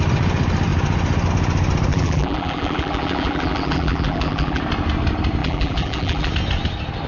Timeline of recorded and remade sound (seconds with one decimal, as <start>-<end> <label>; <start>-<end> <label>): 0.0-1.9 recorded; 1.9-4.6 remade; 4.6-5.4 recorded; 5.4-6.3 remade; 6.3-7.1 recorded